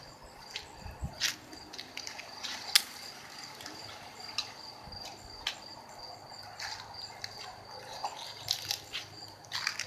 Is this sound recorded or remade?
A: recorded